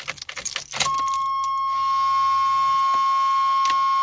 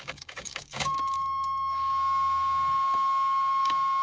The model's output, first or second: second